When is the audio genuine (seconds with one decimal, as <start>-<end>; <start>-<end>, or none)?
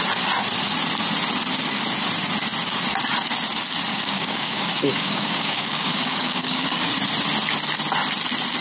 0.0-3.9; 6.9-8.6